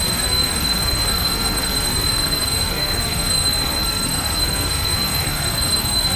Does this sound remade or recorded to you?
remade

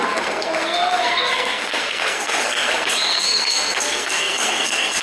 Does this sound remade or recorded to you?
remade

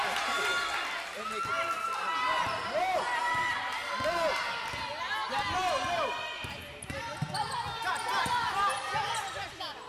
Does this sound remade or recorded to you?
recorded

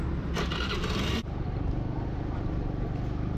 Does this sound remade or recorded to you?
recorded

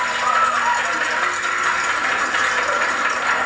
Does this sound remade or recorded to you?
recorded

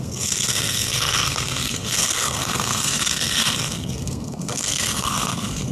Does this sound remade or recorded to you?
remade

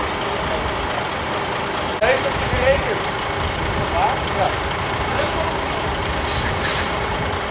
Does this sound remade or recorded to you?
recorded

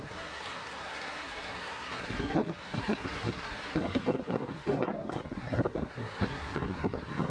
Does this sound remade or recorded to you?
remade